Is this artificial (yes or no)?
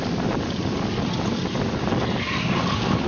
no